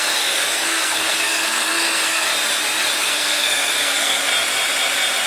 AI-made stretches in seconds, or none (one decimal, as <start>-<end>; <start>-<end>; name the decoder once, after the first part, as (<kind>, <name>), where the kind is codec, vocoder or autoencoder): 0.0-2.3 (codec, SNAC); 3.0-4.3

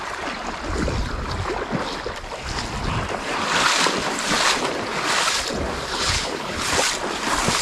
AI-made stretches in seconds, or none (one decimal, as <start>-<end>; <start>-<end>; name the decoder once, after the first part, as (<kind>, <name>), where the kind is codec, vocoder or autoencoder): 5.9-6.6 (codec, HILCodec)